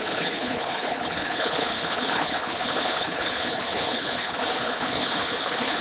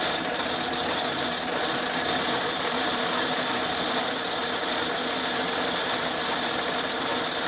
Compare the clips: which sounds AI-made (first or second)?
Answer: first